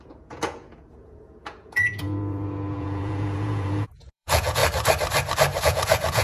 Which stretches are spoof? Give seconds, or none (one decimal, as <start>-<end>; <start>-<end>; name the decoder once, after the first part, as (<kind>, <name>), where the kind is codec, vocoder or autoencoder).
0.0-4.6 (vocoder, Vocos); 5.6-6.2